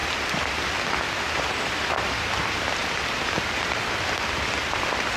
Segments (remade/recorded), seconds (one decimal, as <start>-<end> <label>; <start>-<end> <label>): 0.0-2.0 remade; 2.0-2.8 recorded; 2.8-3.6 remade; 3.6-5.2 recorded